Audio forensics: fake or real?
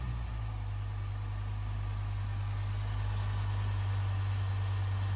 real